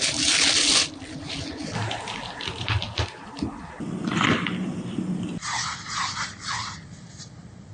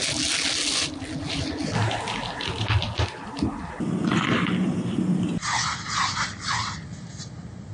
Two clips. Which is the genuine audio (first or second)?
second